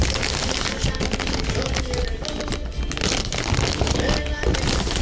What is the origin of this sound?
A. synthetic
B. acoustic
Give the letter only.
B